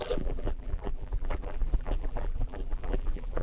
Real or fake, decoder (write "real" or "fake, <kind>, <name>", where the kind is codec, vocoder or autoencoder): fake, vocoder, BigVGAN v2